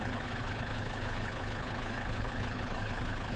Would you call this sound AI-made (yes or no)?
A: yes